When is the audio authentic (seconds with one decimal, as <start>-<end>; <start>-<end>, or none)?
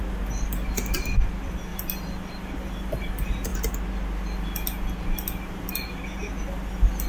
0.0-7.1